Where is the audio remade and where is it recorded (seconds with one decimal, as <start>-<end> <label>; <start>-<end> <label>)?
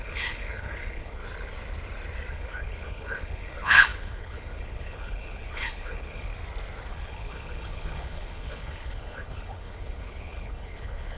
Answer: 0.0-1.2 remade; 1.2-2.3 recorded; 2.3-6.3 remade; 6.3-6.9 recorded; 6.9-11.2 remade